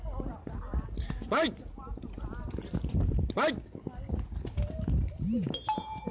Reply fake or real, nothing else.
real